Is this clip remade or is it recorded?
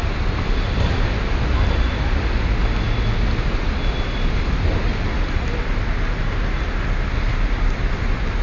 recorded